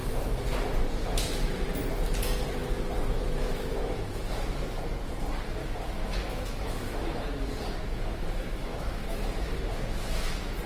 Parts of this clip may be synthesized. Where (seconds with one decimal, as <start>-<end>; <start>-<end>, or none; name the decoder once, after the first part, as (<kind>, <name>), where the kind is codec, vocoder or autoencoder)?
2.6-4.3 (autoencoder, DAC-VAE); 5.6-7.2; 8.7-9.6